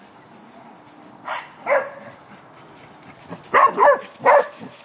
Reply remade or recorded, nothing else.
recorded